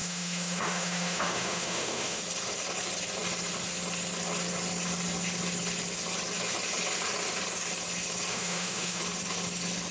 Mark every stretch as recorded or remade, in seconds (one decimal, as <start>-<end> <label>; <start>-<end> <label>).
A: 0.0-2.2 remade; 2.2-8.3 recorded; 8.3-9.0 remade; 9.0-9.9 recorded